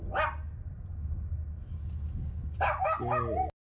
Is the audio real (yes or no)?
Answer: yes